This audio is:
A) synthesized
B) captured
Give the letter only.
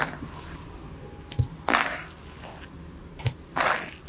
B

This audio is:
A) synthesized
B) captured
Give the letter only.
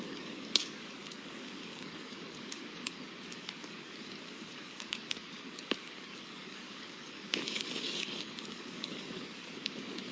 A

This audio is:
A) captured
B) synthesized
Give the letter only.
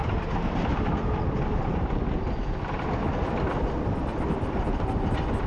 A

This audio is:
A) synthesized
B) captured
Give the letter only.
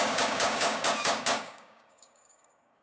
A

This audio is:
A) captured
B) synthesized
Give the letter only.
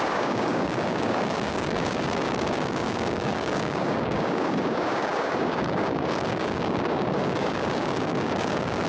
B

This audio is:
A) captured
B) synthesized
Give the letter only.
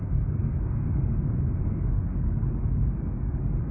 B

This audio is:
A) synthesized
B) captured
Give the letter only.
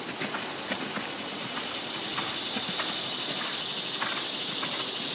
B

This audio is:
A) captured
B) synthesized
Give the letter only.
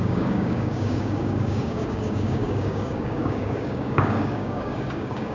B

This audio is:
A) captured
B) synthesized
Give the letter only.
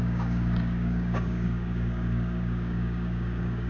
B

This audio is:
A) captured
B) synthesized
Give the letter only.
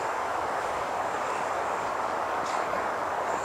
B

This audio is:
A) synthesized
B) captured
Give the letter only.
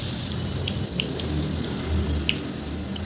B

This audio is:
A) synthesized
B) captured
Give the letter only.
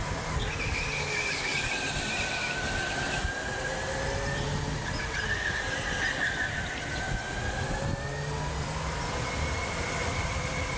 B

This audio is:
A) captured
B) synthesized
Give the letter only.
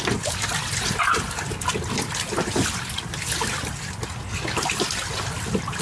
A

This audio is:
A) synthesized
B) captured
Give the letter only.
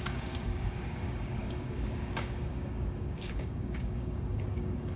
A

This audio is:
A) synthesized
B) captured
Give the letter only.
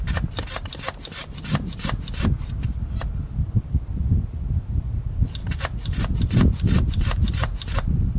B